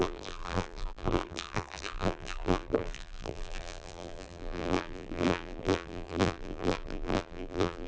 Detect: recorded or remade remade